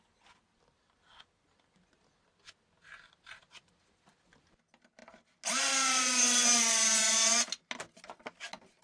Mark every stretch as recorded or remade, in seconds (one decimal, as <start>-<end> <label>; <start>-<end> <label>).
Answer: 0.0-8.8 recorded